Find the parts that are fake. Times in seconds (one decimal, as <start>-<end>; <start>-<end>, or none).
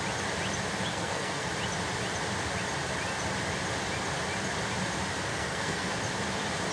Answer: 0.9-1.5; 5.3-6.0